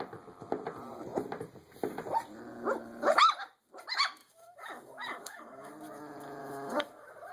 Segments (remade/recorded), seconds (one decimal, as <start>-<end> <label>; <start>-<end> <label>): 0.0-4.2 recorded; 4.2-5.7 remade; 5.7-6.4 recorded; 6.4-7.3 remade